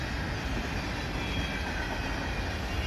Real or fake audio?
real